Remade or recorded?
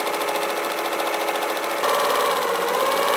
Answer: recorded